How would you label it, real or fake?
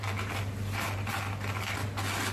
real